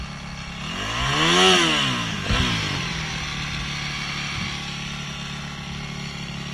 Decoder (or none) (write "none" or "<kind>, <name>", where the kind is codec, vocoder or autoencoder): none